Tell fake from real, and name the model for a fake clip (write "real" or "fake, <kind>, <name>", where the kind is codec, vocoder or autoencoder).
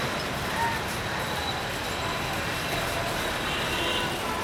fake, vocoder, BigVGAN v2